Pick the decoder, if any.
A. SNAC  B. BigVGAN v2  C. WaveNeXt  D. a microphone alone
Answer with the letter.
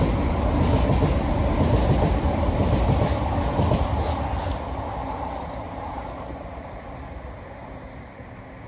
D